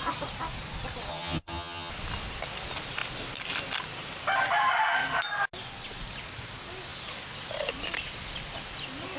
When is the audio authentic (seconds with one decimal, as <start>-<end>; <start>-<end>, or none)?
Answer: 0.0-1.1; 1.9-9.2